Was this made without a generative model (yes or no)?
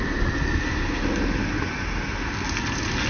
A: yes